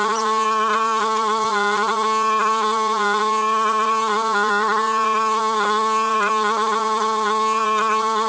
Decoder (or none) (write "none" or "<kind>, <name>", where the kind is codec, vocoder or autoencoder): vocoder, Vocos